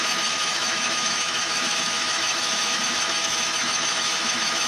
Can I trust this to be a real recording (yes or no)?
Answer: no